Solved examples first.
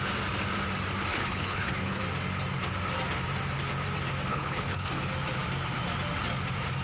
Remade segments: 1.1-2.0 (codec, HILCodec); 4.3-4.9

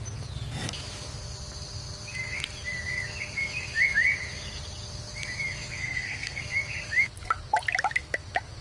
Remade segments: 5.8-6.4 (codec, SNAC)

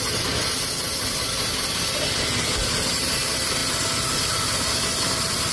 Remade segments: none